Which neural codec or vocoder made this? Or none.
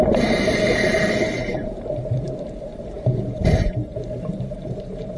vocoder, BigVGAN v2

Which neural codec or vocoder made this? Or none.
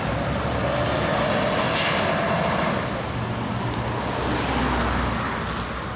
none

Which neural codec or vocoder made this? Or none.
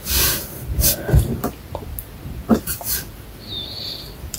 vocoder, BigVGAN v2